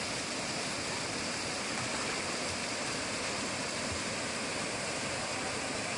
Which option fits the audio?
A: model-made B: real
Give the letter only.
B